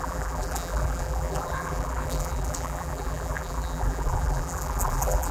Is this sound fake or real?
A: fake